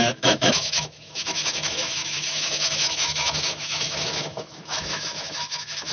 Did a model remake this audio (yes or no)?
yes